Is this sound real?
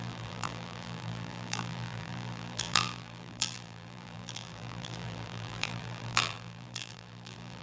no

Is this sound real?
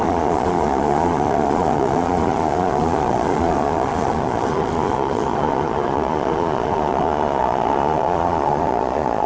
no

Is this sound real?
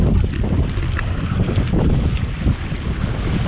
yes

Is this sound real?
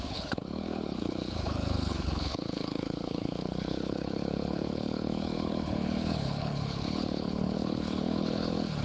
no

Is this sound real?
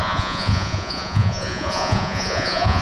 no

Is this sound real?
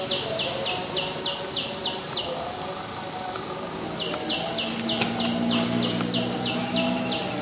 yes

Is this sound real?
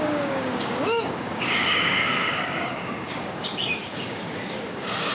no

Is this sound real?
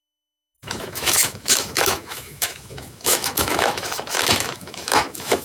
no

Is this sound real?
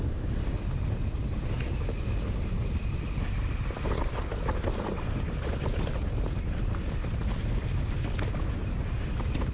yes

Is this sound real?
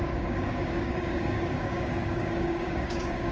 no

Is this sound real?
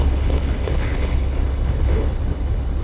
no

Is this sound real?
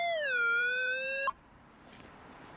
no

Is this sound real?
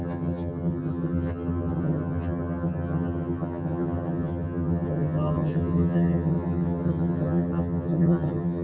no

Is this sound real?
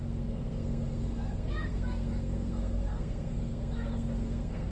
no